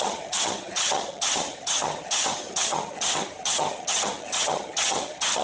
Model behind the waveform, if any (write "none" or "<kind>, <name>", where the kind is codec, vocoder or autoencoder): vocoder, HiFi-GAN